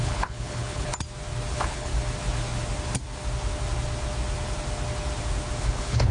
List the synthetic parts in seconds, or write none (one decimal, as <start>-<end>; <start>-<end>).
0.0-0.9; 1.5-1.9; 5.6-6.1